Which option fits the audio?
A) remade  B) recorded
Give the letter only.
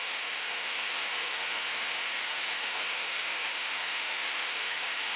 A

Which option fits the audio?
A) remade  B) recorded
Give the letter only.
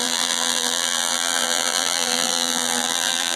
A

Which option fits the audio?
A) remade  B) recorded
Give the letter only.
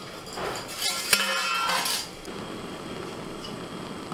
B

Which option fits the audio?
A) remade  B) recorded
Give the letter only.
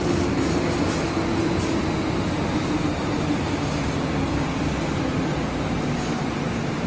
B